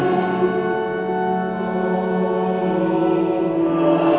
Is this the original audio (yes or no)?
yes